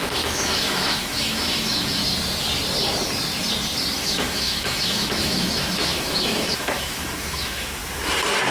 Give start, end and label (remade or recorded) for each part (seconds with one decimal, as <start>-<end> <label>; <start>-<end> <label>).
0.0-2.0 remade; 2.0-4.0 recorded; 4.0-7.8 remade; 7.8-8.5 recorded